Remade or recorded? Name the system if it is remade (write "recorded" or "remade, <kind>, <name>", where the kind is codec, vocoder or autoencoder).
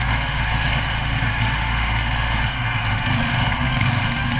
remade, autoencoder, DAC-VAE